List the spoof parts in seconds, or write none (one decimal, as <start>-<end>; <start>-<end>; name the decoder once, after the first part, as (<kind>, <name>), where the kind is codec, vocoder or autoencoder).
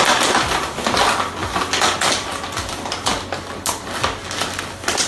none